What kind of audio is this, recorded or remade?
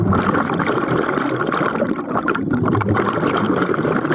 recorded